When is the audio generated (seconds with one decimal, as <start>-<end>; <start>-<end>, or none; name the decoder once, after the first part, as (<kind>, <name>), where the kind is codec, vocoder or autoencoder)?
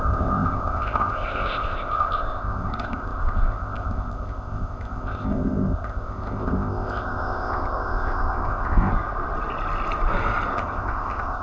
0.0-8.9 (codec, ZipCodec); 10.5-11.4